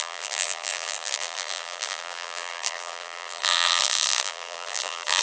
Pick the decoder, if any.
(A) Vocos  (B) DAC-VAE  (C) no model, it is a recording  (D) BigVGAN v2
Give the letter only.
D